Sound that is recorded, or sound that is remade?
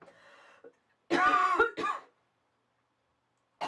recorded